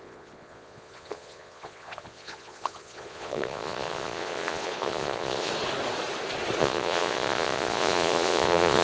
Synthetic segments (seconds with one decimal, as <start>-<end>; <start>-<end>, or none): 0.0-5.5; 6.6-8.8